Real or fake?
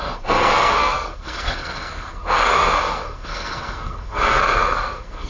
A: fake